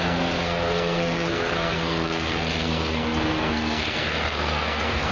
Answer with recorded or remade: remade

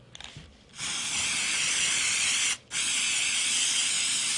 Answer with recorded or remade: recorded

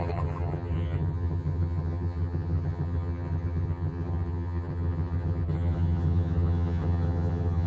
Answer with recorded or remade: remade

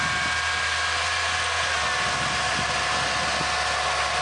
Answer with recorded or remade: recorded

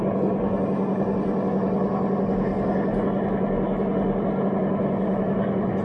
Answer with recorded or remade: recorded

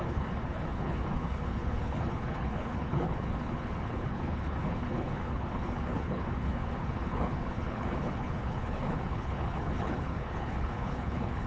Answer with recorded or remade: remade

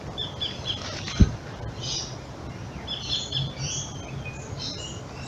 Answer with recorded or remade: recorded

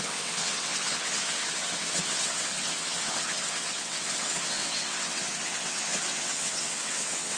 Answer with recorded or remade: remade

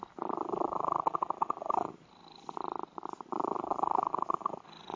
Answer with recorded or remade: recorded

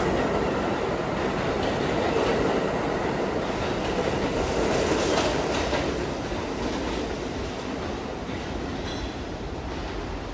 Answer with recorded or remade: recorded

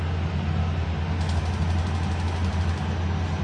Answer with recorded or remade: recorded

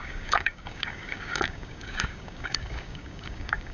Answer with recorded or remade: remade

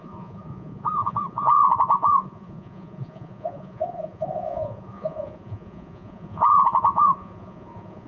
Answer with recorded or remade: remade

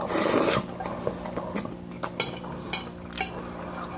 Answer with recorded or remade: recorded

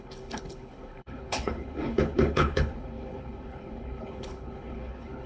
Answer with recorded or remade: remade